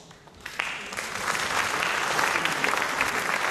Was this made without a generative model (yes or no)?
yes